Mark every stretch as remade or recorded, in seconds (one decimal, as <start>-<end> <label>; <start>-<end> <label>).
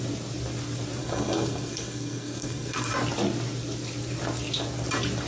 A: 0.0-1.0 recorded; 1.0-2.9 remade; 2.9-5.3 recorded